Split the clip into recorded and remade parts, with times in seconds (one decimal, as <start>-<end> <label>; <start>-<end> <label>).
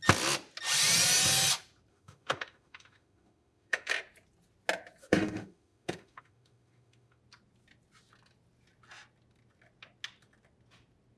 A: 0.0-1.9 recorded; 1.9-3.9 remade; 3.9-5.0 recorded; 5.0-7.2 remade; 7.2-11.2 recorded